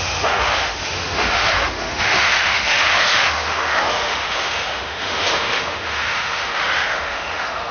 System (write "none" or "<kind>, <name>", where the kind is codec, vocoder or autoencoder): autoencoder, DAC-VAE